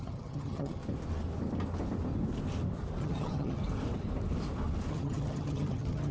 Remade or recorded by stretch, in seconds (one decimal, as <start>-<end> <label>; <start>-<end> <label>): 0.0-0.8 remade; 0.8-3.0 recorded; 3.0-3.6 remade; 3.6-4.9 recorded; 4.9-6.1 remade